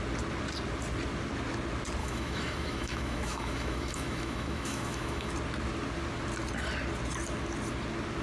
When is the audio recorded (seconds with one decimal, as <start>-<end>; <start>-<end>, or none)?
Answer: 0.0-2.0; 5.3-8.2